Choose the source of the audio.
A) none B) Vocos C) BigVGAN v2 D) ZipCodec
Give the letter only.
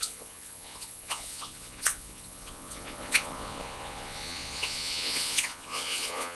B